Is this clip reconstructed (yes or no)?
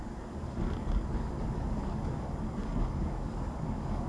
yes